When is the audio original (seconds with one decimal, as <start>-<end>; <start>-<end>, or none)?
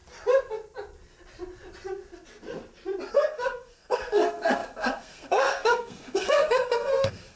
0.0-3.1